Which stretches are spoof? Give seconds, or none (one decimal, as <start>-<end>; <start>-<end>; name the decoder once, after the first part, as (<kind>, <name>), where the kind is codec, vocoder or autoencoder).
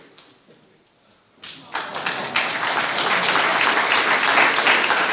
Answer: none